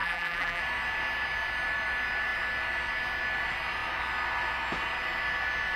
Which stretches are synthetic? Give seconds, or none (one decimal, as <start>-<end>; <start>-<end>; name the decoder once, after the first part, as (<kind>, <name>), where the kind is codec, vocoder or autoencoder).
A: 0.0-0.6 (vocoder, BigVGAN v2)